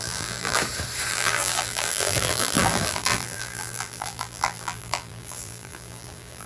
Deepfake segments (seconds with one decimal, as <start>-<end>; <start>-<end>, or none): 0.0-0.6; 1.1-6.5